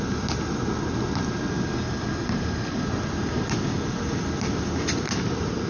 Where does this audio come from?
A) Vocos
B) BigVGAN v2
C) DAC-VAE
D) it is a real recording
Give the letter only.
D